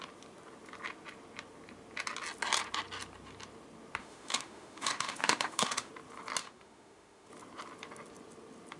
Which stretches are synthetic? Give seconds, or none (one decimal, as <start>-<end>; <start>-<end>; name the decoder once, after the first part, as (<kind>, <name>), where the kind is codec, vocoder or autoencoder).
4.0-5.9 (autoencoder, DAC-VAE); 6.4-7.3